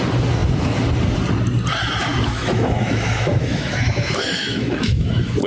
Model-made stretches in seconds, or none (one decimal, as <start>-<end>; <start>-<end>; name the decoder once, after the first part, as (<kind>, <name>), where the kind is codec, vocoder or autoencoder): 2.1-5.5 (autoencoder, DAC-VAE)